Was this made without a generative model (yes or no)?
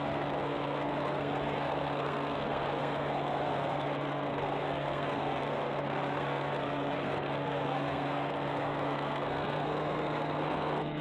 no